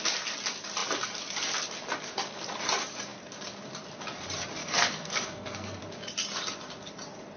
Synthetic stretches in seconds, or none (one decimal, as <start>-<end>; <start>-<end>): 4.6-5.8